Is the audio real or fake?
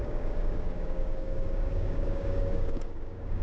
fake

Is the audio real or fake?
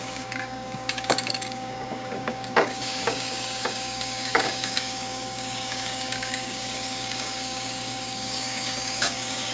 fake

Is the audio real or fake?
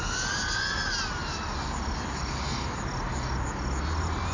real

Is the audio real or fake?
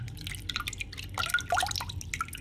real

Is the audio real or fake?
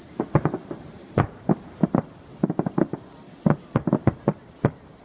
real